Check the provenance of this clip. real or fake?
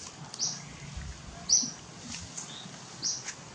real